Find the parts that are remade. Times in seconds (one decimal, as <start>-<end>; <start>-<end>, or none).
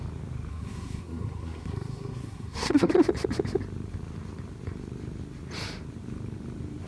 0.5-2.9